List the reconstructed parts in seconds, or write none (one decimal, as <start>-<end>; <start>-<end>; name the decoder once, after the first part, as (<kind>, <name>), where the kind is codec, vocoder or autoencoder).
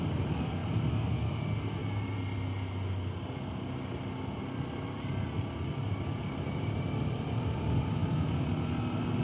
0.0-0.6 (vocoder, BigVGAN v2); 1.2-1.8; 5.7-8.0